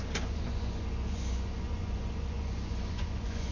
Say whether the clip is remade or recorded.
remade